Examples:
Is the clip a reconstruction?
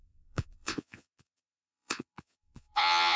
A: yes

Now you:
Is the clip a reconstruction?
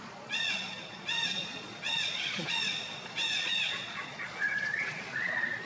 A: yes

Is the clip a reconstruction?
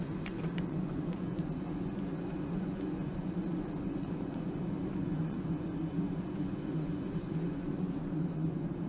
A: yes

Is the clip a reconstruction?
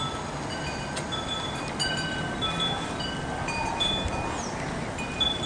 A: no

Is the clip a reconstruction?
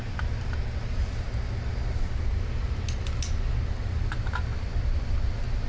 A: no